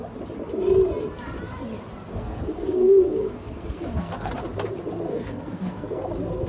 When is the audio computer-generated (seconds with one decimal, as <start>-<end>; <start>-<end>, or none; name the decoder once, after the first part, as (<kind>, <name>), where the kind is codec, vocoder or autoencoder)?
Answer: 2.1-4.3 (codec, SNAC); 5.1-6.0

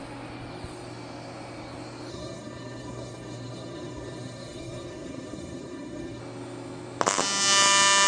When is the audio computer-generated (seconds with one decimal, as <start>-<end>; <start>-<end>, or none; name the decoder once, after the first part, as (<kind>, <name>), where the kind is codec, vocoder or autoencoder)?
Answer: 2.1-6.2 (codec, SNAC)

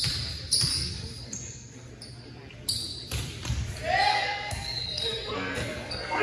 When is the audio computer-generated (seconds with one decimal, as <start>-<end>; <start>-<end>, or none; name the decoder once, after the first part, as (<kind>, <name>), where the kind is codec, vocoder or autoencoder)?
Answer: 0.7-1.9 (codec, SNAC); 4.1-6.2

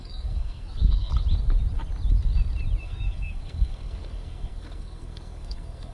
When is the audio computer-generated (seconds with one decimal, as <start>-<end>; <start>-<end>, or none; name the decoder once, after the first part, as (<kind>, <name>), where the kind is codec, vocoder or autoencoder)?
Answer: 0.0-1.1 (codec, SNAC); 2.8-5.9

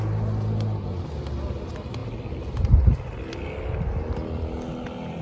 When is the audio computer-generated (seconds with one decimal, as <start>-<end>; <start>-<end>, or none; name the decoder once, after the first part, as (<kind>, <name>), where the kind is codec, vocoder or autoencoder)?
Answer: none